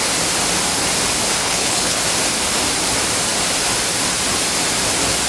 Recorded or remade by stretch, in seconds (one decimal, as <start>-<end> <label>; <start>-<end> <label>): 0.0-1.4 recorded; 1.4-2.0 remade; 2.0-5.3 recorded